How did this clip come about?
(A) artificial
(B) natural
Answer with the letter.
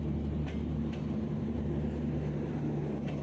B